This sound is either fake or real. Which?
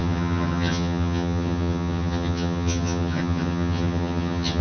fake